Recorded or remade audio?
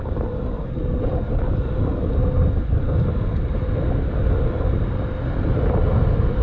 recorded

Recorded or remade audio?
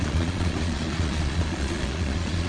remade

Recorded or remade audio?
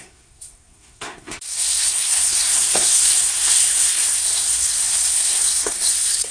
remade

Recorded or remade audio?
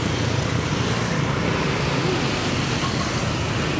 recorded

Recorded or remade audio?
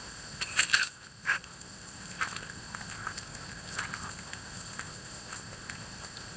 remade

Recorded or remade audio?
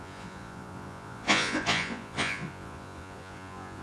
remade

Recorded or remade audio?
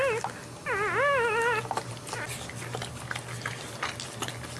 recorded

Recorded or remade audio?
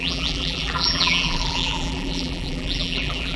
remade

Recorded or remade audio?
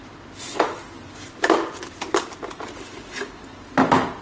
recorded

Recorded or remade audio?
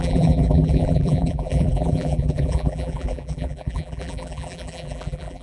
remade